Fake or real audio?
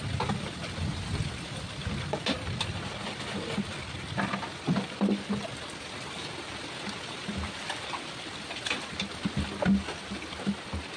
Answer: real